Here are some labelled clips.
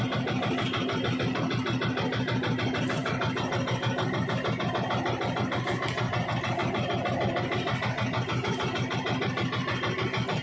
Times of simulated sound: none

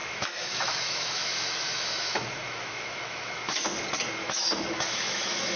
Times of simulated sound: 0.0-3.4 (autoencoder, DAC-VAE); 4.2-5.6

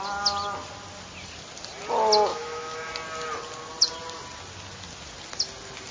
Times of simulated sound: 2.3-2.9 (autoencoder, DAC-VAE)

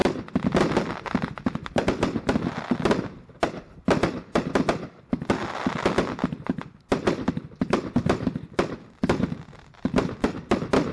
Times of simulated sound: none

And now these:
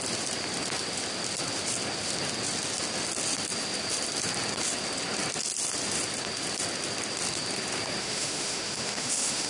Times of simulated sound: 8.0-9.5 (autoencoder, DAC-VAE)

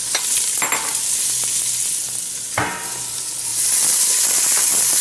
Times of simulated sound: none

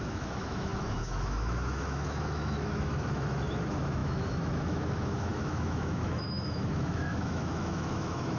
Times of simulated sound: 0.0-8.4 (autoencoder, DAC-VAE)

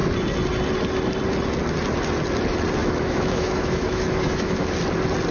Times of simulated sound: 2.8-4.7 (autoencoder, DAC-VAE)